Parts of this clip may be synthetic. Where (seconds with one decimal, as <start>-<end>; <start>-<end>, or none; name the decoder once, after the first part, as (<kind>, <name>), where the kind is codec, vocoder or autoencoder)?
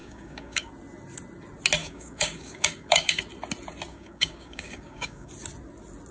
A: 0.0-0.7 (codec, DAC); 1.8-3.2; 3.9-5.3